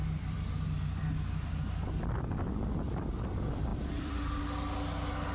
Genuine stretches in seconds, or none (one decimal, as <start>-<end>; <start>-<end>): 2.3-3.7; 4.4-5.3